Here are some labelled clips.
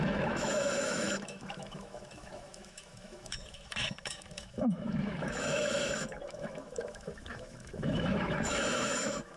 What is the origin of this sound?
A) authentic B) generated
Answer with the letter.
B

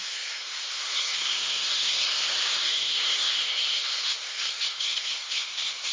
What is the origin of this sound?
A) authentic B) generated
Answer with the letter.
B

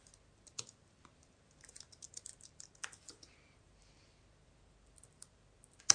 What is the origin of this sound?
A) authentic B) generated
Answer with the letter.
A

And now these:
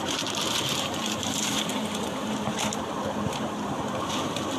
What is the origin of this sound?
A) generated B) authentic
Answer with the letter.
A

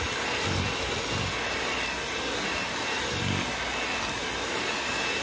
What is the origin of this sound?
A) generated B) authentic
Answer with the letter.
B